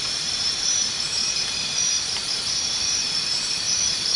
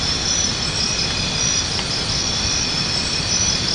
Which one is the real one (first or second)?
second